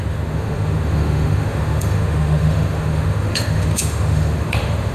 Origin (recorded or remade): remade